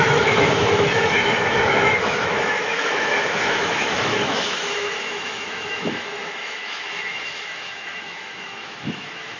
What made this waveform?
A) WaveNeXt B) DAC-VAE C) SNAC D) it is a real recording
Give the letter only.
B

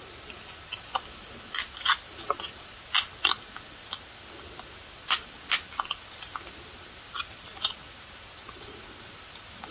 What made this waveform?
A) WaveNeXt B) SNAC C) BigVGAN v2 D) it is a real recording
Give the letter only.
D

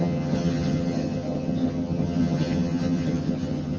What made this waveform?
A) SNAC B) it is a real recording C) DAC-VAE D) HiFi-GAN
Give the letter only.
D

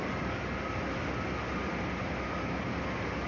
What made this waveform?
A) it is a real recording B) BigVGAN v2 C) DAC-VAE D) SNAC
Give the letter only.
A